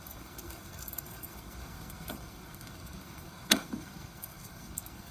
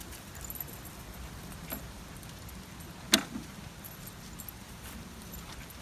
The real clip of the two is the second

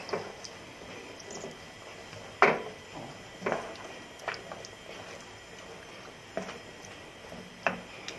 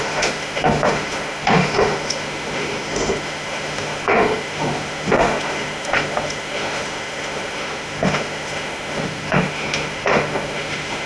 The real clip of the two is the first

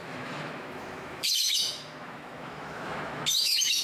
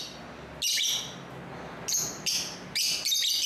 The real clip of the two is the second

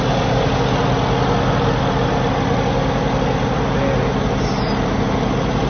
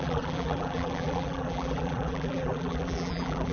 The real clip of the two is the first